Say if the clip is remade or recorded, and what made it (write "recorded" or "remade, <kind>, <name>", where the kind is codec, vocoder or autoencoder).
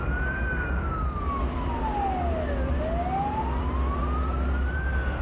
recorded